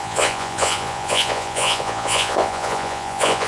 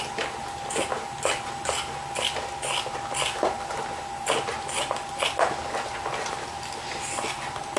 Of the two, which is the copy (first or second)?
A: first